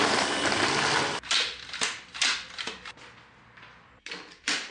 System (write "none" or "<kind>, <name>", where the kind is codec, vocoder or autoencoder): none